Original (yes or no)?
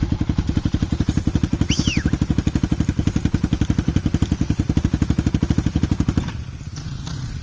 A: yes